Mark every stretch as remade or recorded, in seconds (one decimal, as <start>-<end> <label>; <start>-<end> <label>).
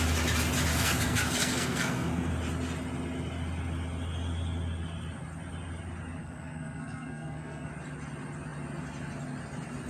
0.0-0.7 recorded; 0.7-2.3 remade; 2.3-6.2 recorded; 6.2-7.7 remade; 7.7-9.9 recorded